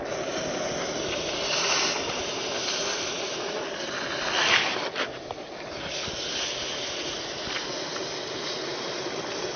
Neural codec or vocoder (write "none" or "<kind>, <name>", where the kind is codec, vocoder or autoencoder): none